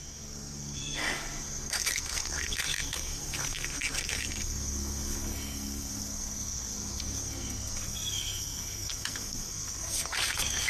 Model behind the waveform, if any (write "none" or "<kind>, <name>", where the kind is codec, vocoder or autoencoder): codec, SNAC